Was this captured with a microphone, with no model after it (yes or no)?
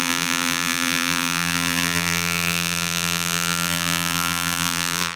no